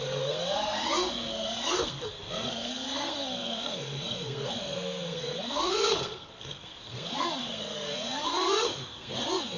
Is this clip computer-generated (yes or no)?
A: yes